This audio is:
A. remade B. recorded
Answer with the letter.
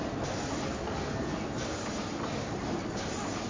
B